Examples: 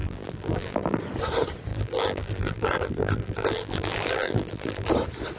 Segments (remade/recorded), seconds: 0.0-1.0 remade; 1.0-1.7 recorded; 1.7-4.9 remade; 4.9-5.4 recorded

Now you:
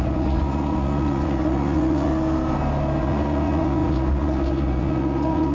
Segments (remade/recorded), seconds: 0.0-2.1 remade; 2.1-3.0 recorded; 3.0-5.5 remade

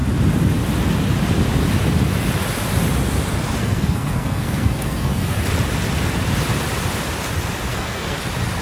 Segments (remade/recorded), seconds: 0.0-3.6 recorded; 3.6-5.3 remade; 5.3-7.7 recorded; 7.7-8.2 remade; 8.2-8.6 recorded

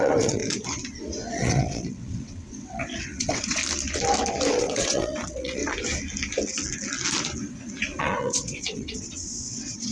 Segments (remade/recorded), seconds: 0.0-0.4 remade; 0.4-1.3 recorded; 1.3-3.6 remade; 3.6-4.5 recorded; 4.5-5.6 remade; 5.6-8.0 recorded; 8.0-9.9 remade

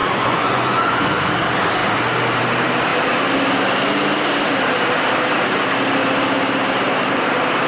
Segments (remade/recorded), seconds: 0.0-1.3 remade; 1.3-7.7 recorded